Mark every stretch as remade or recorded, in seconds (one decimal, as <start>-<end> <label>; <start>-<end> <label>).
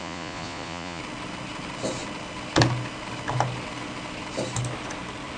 0.0-1.0 remade; 1.0-5.4 recorded